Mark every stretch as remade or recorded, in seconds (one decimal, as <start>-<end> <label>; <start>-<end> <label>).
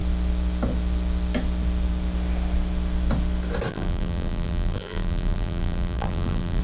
0.0-3.7 recorded; 3.7-6.6 remade